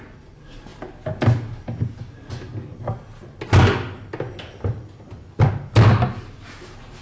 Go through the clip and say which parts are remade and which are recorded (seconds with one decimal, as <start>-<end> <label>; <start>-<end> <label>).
0.0-7.0 recorded